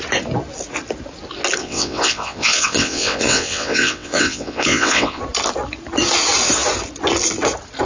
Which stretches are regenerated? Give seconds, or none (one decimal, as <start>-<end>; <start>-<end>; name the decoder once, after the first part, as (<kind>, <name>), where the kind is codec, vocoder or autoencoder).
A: 1.6-5.2 (vocoder, WaveNeXt)